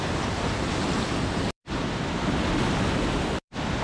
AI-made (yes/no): yes